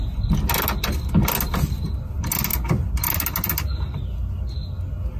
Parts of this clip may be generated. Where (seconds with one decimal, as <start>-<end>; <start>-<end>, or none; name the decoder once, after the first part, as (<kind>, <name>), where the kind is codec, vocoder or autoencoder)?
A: none